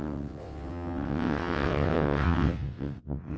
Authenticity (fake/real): fake